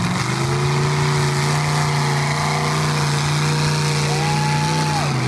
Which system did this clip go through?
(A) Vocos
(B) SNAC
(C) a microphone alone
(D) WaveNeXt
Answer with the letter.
C